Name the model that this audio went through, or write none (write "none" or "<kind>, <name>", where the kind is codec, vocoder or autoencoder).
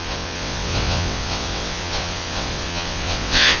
vocoder, WaveNeXt